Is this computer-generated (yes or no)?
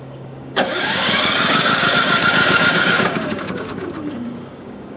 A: yes